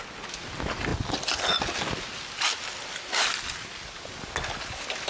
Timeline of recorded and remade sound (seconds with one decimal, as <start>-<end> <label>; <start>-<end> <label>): 0.0-5.1 recorded